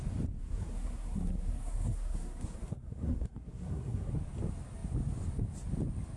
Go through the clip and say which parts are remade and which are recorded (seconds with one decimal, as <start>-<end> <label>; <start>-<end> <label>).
0.0-0.4 recorded; 0.4-4.1 remade; 4.1-6.2 recorded